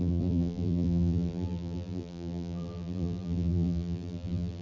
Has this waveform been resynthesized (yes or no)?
yes